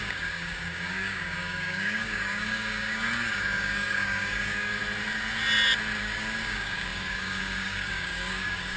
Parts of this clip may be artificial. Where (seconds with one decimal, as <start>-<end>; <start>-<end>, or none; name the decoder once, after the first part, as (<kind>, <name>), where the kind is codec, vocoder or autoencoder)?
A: 0.0-4.8 (codec, DAC); 6.0-8.8